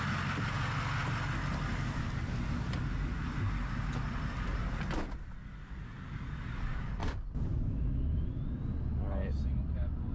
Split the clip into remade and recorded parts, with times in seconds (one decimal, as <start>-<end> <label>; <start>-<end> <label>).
0.0-10.1 recorded